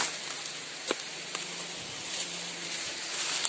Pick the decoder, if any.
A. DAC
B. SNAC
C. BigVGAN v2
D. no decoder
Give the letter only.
D